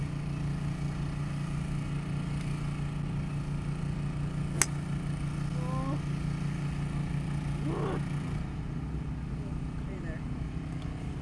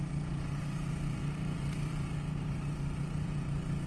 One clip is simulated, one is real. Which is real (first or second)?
first